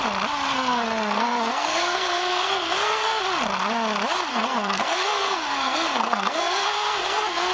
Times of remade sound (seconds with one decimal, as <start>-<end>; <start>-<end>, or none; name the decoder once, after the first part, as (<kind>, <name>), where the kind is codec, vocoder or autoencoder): 0.5-3.2 (codec, SNAC); 4.3-7.5